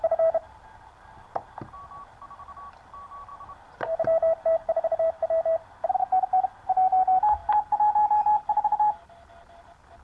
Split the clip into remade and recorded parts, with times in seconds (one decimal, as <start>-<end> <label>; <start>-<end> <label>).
0.0-7.4 recorded; 7.4-9.6 remade; 9.6-10.0 recorded